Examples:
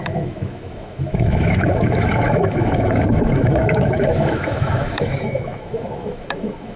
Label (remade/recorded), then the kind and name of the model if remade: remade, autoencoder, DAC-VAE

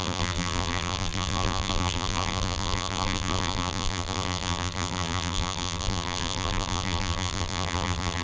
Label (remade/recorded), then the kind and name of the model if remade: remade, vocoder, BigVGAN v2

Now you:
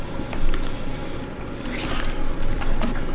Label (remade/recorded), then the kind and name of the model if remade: recorded